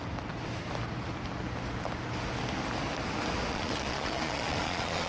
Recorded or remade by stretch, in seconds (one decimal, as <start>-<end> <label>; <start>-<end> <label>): 0.0-3.5 recorded; 3.5-5.1 remade